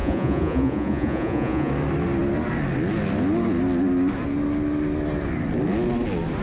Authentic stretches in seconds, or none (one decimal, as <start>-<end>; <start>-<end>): 1.7-6.4